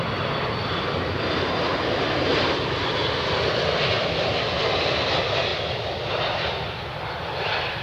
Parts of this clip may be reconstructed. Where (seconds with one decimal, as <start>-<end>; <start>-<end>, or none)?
none